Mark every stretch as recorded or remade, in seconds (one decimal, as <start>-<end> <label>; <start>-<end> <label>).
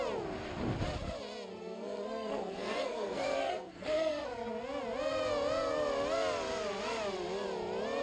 0.0-1.5 recorded; 1.5-4.5 remade; 4.5-8.0 recorded